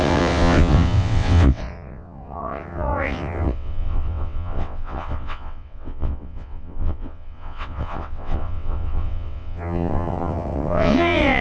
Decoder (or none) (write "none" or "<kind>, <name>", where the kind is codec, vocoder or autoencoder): vocoder, WaveNeXt